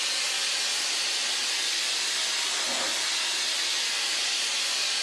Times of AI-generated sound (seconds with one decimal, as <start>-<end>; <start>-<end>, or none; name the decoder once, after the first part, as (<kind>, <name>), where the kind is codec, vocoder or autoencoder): none